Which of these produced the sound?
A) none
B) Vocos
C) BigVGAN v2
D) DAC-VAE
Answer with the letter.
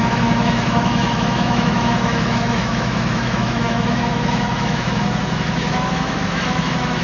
D